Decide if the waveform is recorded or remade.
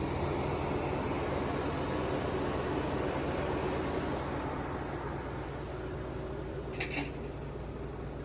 recorded